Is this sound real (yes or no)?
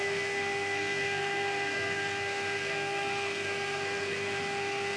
no